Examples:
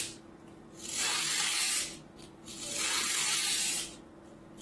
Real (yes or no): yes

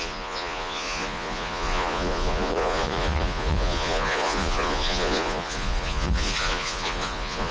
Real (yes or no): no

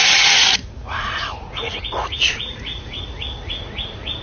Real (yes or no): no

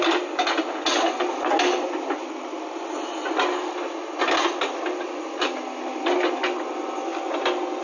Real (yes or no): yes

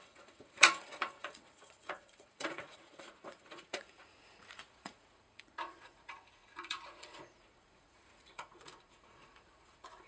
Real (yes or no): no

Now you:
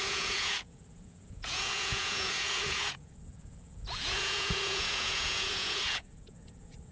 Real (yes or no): no